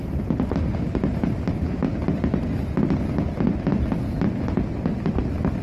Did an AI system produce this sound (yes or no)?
no